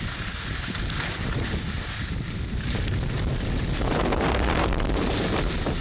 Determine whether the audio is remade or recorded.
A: remade